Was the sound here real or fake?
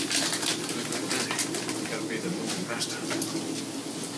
real